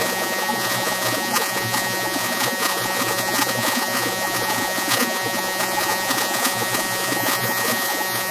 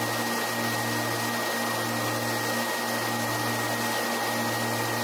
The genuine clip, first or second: second